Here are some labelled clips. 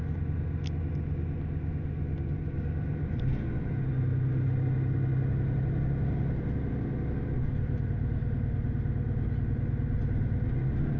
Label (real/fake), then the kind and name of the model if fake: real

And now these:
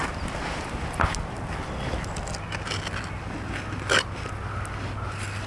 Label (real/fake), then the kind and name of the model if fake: real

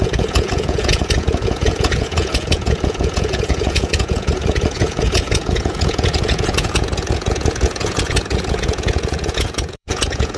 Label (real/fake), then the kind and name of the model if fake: fake, vocoder, Vocos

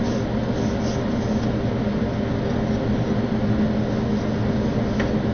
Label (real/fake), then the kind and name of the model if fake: real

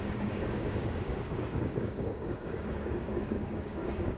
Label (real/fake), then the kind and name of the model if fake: fake, codec, DAC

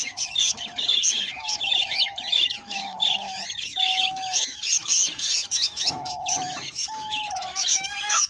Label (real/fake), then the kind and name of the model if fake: fake, autoencoder, DAC-VAE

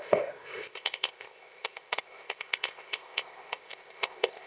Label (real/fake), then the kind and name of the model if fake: fake, codec, ZipCodec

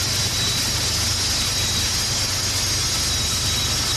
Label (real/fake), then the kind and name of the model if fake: real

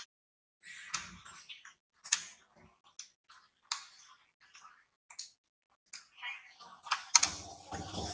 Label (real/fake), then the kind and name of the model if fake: real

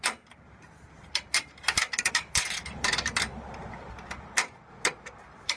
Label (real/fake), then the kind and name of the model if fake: fake, vocoder, BigVGAN v2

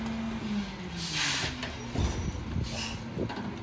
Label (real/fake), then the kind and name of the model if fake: real